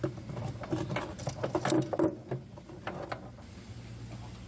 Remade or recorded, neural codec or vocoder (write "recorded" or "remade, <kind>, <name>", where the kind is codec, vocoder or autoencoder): recorded